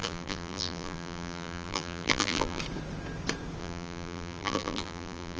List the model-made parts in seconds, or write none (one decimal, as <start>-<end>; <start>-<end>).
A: 0.0-2.6; 3.6-5.4